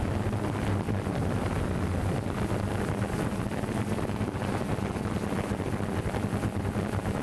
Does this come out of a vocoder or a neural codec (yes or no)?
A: no